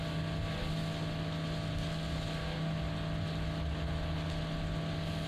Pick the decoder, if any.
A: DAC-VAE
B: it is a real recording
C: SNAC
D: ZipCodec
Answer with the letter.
B